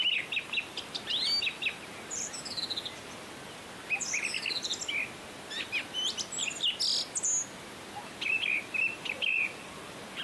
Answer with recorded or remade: recorded